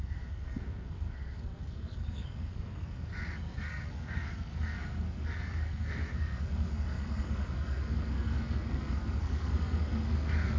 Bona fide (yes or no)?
no